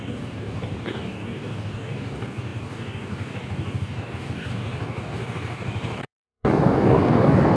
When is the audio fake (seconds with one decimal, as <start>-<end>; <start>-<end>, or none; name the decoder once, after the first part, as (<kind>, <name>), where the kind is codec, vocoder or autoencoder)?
0.0-7.6 (codec, DAC)